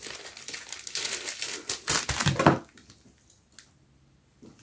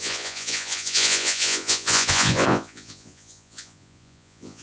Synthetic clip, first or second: second